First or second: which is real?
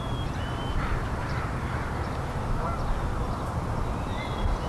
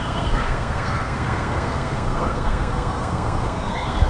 first